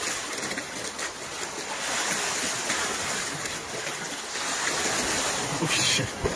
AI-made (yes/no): no